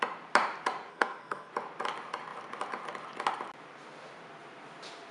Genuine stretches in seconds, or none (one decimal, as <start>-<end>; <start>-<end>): 0.0-0.9; 1.5-5.1

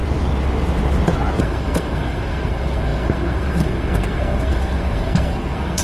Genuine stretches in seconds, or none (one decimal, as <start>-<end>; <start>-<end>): 0.0-1.4

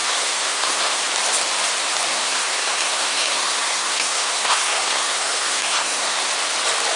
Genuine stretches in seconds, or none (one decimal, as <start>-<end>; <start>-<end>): 1.0-2.1; 6.3-7.0